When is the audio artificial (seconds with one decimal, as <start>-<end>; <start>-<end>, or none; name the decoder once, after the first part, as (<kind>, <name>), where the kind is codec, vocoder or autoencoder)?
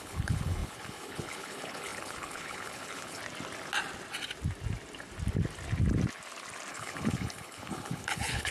0.0-3.2 (codec, HILCodec); 6.7-8.5